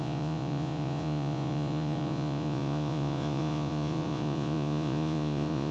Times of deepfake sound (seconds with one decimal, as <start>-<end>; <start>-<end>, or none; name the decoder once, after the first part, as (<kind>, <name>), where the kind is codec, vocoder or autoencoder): 0.0-5.7 (vocoder, Vocos)